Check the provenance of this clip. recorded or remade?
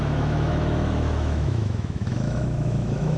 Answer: remade